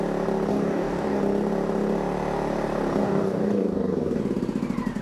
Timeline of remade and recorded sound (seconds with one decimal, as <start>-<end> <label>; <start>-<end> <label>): 0.0-0.5 recorded; 0.5-1.2 remade; 1.2-3.0 recorded; 3.0-4.2 remade; 4.2-5.0 recorded